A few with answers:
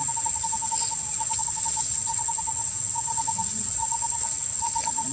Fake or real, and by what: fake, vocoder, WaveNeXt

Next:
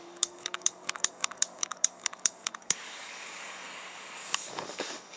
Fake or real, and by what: fake, codec, DAC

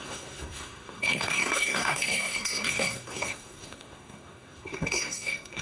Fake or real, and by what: fake, codec, SNAC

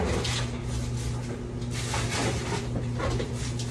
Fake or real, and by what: real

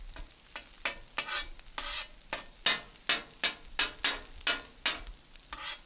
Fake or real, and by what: real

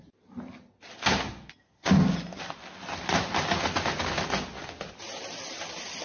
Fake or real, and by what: real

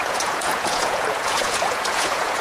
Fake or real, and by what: fake, vocoder, Vocos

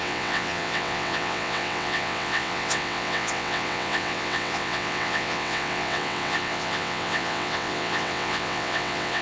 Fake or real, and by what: fake, vocoder, WaveNeXt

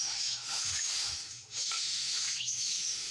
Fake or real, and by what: fake, autoencoder, DAC-VAE